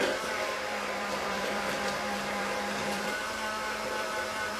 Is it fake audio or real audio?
fake